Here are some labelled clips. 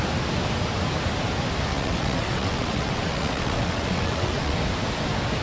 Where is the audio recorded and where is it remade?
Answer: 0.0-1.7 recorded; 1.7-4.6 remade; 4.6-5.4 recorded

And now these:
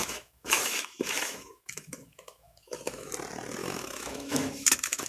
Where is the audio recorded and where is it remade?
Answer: 0.0-3.1 remade; 3.1-3.6 recorded; 3.6-5.1 remade

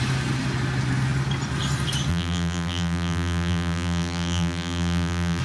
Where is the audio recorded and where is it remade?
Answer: 0.0-2.1 recorded; 2.1-5.4 remade

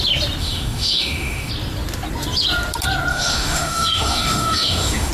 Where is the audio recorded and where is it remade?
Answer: 0.0-0.4 recorded; 0.4-1.5 remade; 1.5-3.1 recorded; 3.1-5.1 remade

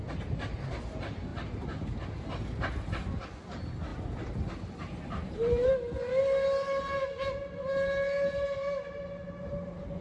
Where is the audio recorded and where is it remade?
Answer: 0.0-3.9 recorded; 3.9-5.7 remade; 5.7-10.0 recorded